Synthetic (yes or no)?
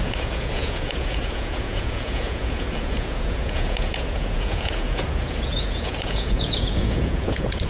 yes